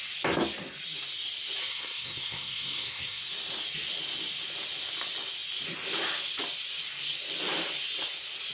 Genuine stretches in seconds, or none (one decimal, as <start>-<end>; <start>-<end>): 0.0-1.6; 3.2-8.5